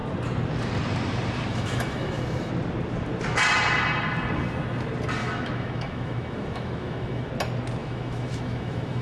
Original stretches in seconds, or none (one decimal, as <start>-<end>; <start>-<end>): 0.0-1.5; 2.5-5.2; 7.3-7.8